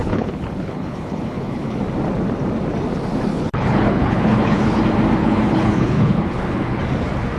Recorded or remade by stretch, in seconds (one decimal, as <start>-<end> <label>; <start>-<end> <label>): 0.0-1.8 remade; 1.8-3.3 recorded; 3.3-4.8 remade; 4.8-5.2 recorded; 5.2-6.8 remade; 6.8-7.4 recorded